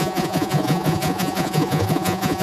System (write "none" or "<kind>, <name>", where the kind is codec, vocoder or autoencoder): vocoder, Vocos